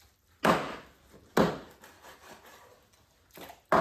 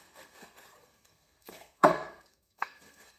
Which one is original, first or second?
first